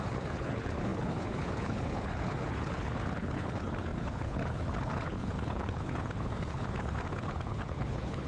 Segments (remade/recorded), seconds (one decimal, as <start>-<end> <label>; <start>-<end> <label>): 0.0-8.3 remade